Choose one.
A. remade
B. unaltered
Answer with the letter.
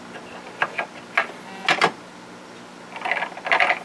B